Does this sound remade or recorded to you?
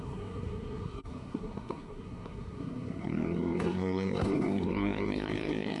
remade